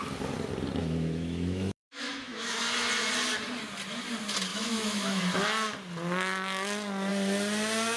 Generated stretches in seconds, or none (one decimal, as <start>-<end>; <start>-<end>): 0.8-2.6; 4.5-5.2